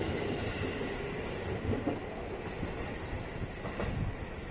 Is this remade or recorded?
recorded